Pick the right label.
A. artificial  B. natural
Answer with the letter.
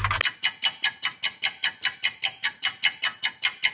B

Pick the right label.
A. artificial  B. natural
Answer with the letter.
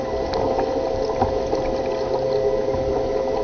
B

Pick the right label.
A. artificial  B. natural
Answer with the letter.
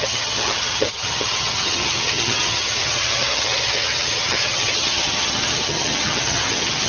A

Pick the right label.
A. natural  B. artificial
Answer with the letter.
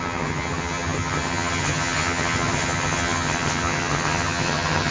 B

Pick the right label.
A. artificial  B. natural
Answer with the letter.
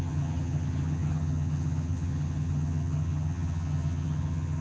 A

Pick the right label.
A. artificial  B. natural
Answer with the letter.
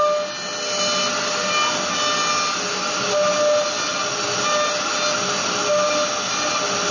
B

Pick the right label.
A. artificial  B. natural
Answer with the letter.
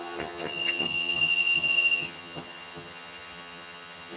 A